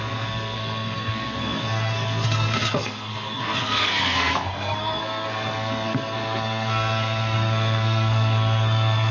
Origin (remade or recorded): remade